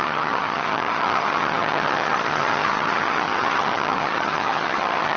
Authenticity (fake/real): fake